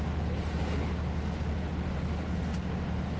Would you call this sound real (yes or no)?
yes